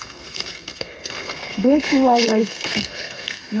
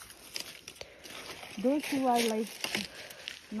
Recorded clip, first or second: second